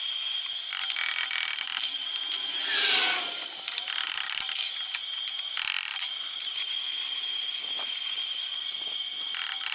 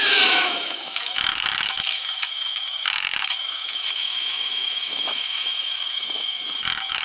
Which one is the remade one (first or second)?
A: second